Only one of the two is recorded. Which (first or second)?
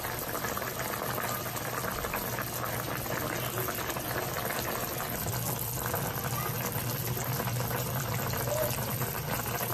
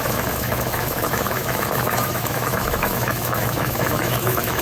first